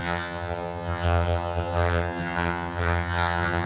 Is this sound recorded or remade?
remade